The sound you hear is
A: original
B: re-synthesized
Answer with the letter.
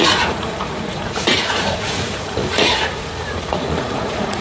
B